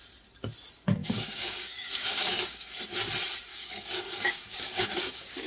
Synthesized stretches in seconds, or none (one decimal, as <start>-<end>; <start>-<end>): 1.0-2.8; 3.5-5.5